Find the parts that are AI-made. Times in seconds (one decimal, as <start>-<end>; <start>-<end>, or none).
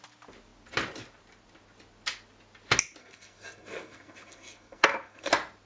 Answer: 3.0-5.3